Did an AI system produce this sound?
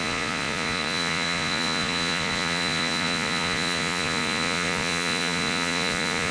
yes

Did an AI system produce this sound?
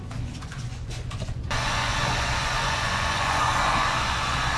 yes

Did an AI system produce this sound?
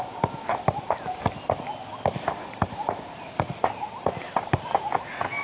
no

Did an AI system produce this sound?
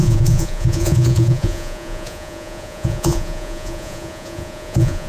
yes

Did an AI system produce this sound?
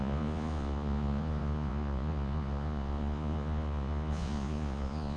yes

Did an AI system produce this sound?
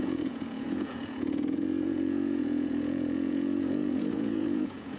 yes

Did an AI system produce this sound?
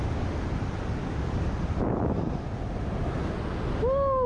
no